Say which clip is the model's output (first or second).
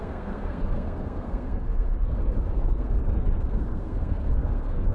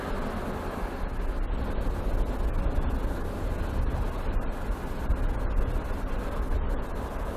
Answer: first